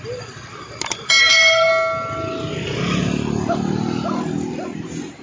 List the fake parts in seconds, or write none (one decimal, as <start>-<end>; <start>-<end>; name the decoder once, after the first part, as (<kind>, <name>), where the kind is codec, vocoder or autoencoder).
1.2-1.7 (codec, SNAC)